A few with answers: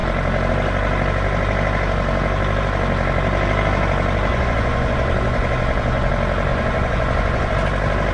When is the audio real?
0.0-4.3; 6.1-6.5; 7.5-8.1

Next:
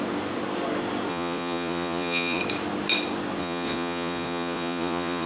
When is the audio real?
0.0-1.1; 2.4-3.4

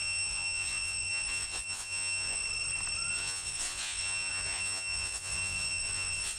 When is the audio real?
2.4-3.1

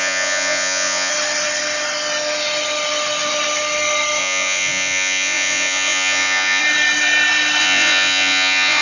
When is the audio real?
1.1-4.2; 6.6-7.6